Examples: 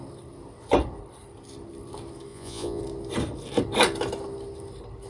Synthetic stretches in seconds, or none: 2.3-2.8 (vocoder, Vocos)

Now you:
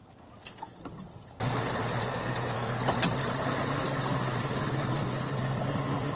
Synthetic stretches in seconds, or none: 0.0-0.8 (codec, SNAC); 2.2-2.8

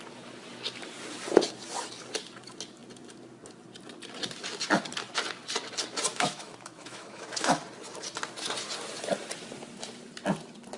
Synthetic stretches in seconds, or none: 6.1-7.6 (autoencoder, DAC-VAE)

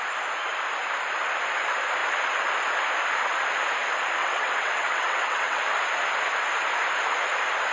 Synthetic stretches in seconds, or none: 4.2-5.6 (vocoder, WaveNeXt)

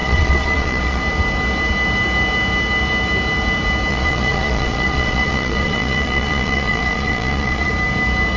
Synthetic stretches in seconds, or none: 0.0-1.0 (vocoder, Vocos); 3.9-7.7

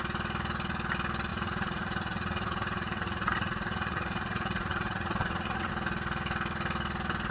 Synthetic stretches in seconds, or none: 1.3-5.7 (vocoder, Vocos)

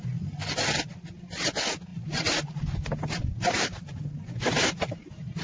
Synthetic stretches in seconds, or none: none

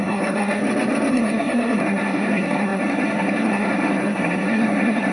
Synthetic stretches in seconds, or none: 0.0-0.6 (codec, SNAC); 1.1-5.1